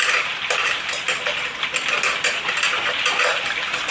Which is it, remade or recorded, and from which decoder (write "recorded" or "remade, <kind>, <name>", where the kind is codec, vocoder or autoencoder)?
recorded